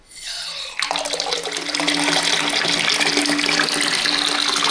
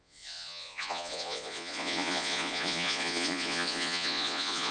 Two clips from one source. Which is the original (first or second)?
first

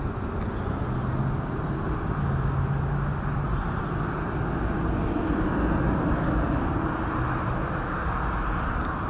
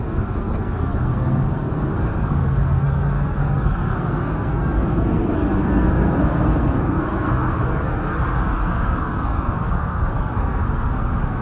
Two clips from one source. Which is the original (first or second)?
first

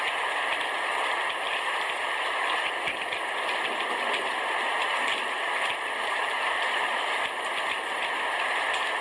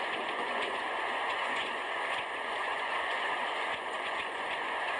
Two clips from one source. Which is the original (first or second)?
first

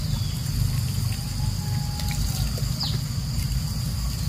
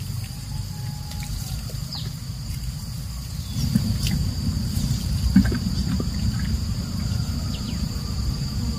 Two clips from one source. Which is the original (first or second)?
first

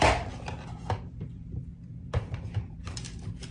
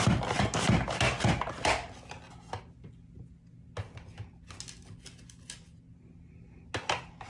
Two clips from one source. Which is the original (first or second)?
second